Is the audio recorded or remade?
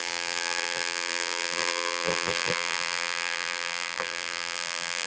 remade